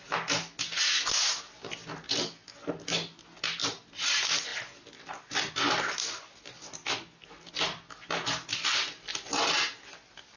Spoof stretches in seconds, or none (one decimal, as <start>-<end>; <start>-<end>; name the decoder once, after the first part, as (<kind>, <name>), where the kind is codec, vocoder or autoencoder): none

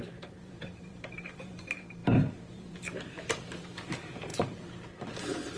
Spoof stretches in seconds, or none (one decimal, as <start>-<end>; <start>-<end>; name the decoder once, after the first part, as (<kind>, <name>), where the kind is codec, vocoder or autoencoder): 0.0-5.6 (vocoder, BigVGAN v2)

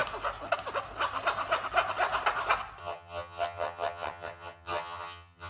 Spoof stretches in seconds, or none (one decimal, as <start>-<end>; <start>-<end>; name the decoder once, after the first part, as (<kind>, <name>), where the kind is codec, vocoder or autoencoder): 2.8-5.5 (vocoder, HiFi-GAN)

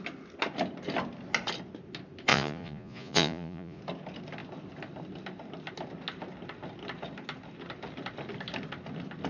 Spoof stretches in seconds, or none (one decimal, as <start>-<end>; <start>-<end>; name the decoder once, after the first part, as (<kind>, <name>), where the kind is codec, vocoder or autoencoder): 2.3-3.8 (vocoder, Vocos)